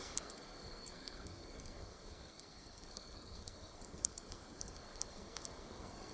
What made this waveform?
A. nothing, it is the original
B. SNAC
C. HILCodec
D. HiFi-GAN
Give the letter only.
B